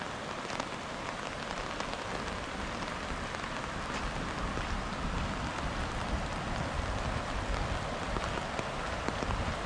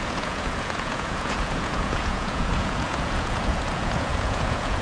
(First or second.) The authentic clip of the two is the first